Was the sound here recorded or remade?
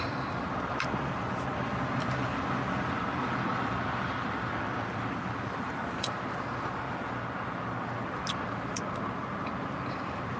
recorded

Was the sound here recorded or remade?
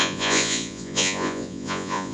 remade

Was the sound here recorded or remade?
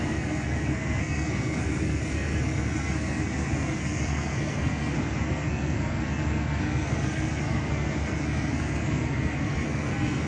remade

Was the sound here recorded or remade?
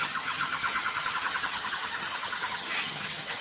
remade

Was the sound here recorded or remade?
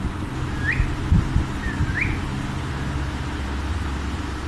recorded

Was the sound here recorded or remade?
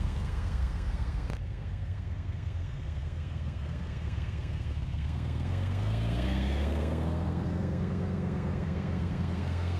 remade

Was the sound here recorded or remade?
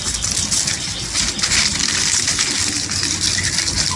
recorded